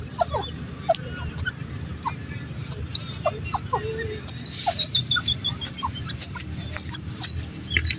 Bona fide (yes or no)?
yes